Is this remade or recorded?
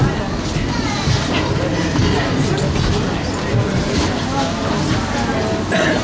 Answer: recorded